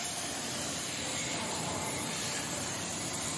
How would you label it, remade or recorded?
remade